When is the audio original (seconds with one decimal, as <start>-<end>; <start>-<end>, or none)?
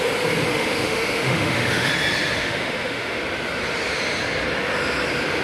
0.0-0.5; 1.9-2.4; 3.2-5.4